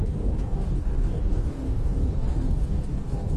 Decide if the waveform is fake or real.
fake